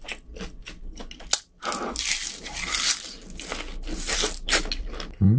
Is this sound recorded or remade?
recorded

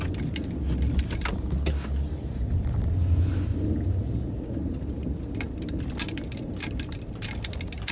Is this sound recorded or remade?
recorded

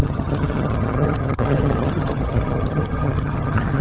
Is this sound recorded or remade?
remade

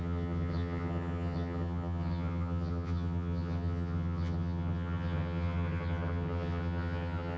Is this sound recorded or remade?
remade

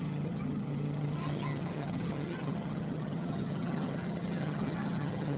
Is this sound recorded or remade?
remade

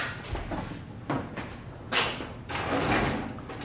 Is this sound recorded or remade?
recorded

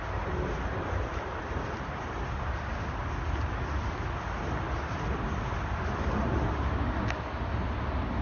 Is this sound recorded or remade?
recorded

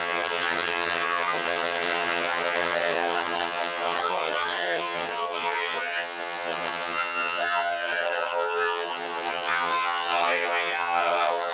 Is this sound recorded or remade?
remade